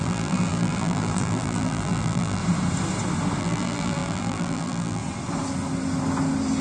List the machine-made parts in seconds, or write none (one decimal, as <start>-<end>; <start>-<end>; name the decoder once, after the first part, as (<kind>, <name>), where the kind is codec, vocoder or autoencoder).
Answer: 0.0-2.4 (vocoder, BigVGAN v2); 3.4-5.0